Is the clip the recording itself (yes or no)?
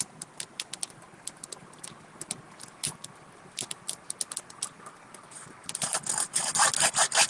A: yes